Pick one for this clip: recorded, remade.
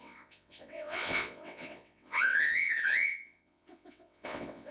remade